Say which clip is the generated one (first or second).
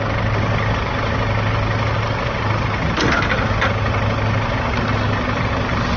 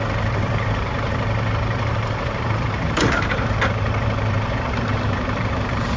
second